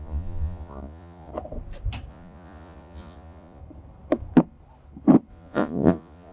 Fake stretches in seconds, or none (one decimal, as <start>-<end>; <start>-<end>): 0.0-1.3; 2.1-3.6; 5.3-6.3